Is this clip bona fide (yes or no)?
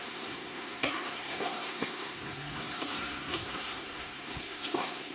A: no